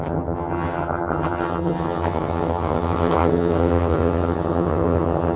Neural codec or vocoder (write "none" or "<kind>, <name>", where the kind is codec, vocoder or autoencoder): vocoder, HiFi-GAN